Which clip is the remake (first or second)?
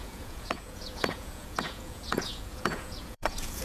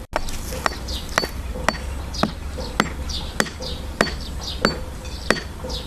first